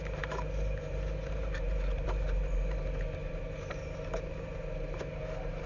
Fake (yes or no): yes